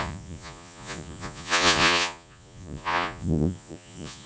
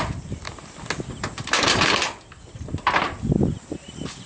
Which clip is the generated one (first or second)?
first